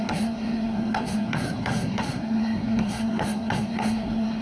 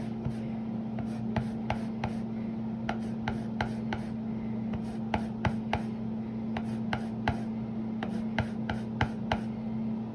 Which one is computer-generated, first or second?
first